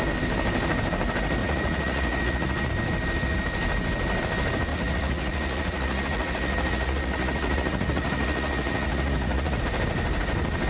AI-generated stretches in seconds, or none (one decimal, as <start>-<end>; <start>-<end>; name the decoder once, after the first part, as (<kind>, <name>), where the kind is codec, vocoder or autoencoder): 1.4-2.7 (vocoder, Vocos); 4.7-9.6